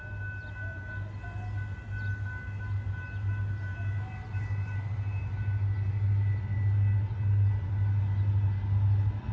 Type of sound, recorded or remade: recorded